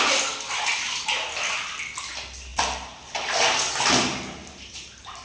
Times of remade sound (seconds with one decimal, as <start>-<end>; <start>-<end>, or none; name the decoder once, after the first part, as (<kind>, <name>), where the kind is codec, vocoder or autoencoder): 2.5-3.3 (vocoder, BigVGAN v2)